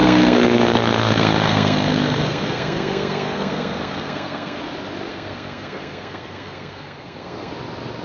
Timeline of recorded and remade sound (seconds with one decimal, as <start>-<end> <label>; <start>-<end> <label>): 0.0-4.6 remade; 4.6-5.1 recorded; 5.1-7.5 remade; 7.5-8.0 recorded